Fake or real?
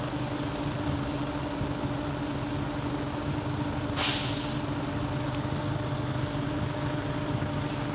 real